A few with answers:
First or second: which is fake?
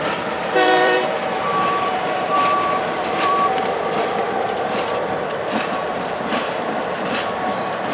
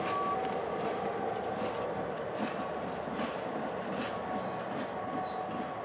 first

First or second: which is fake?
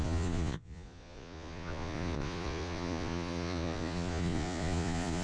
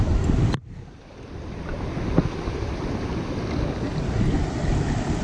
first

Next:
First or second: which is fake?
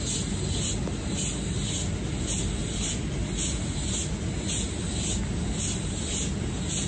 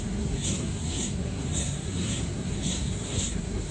second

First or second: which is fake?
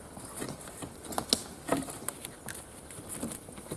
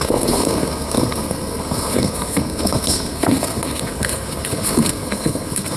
second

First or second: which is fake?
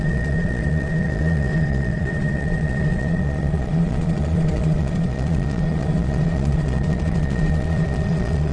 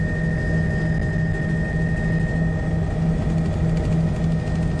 first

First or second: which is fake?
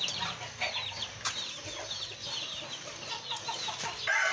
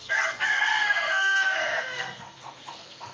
second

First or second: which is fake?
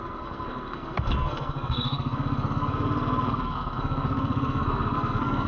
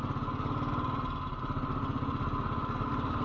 first